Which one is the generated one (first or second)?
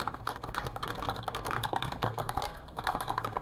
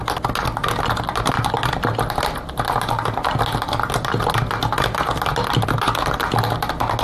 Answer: first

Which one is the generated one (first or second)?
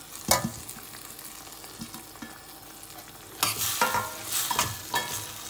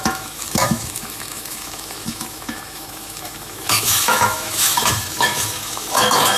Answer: second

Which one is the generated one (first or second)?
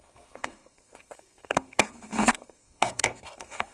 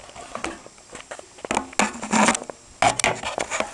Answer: first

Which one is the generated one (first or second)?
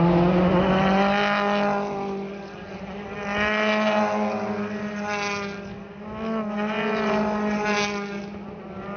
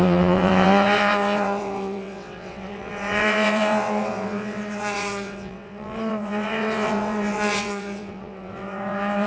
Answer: second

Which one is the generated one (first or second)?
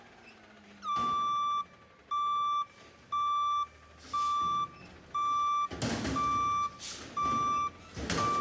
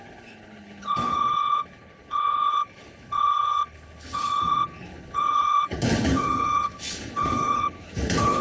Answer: second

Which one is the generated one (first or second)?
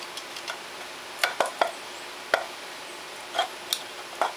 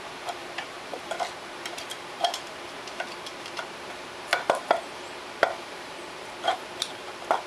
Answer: second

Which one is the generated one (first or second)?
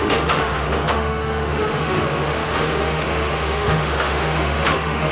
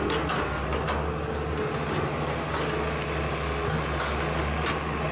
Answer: first